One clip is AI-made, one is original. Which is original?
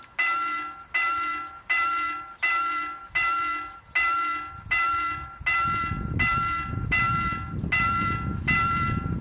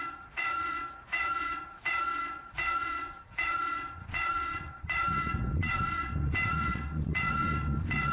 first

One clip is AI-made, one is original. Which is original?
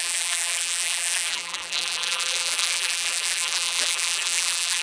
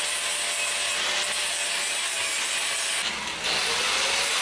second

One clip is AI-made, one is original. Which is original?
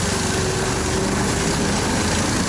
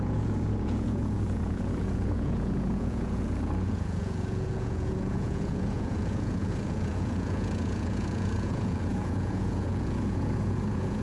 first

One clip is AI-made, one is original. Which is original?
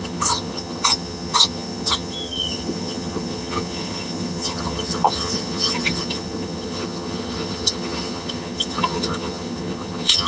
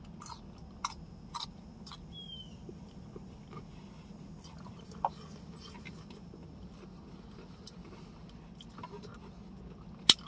second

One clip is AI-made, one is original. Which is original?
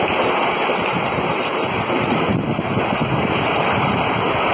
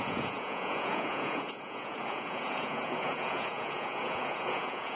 first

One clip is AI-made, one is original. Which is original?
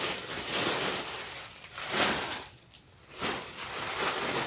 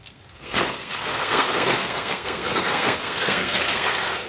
first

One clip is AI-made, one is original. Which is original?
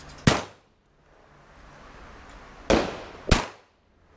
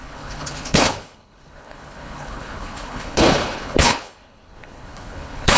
first